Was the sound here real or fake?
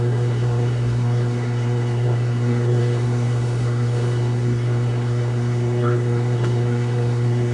fake